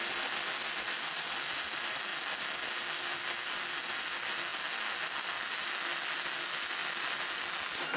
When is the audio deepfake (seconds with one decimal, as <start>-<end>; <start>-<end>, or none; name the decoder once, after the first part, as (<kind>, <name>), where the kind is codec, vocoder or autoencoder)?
none